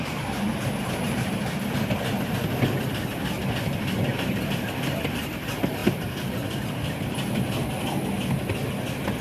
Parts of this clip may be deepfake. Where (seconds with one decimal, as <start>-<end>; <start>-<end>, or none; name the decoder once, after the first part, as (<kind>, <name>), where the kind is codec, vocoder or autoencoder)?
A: none